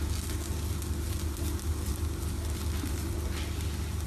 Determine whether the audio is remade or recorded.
recorded